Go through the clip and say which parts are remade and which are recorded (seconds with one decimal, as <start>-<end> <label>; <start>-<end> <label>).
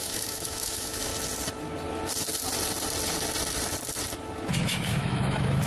0.0-1.1 remade; 1.1-4.5 recorded; 4.5-5.7 remade